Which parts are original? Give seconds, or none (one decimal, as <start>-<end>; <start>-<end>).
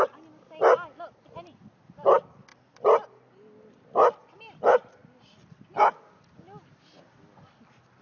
0.0-8.0